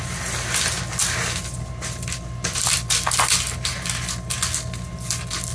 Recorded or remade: recorded